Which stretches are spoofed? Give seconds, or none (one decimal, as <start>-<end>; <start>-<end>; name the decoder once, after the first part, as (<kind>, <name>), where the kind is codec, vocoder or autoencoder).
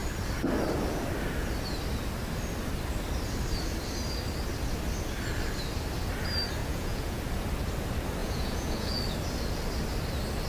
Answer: 6.6-7.2 (vocoder, Vocos); 8.2-9.0